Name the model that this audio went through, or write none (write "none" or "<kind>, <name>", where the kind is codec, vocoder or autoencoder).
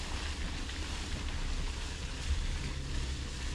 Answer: none